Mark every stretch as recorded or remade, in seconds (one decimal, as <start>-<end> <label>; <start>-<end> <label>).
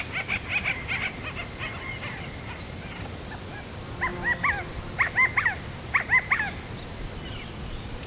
0.0-8.1 recorded